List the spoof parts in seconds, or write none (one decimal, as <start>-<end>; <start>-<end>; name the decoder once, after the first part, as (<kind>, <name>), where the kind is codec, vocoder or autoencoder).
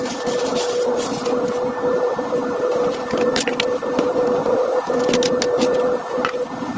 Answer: 4.4-5.0 (vocoder, Vocos)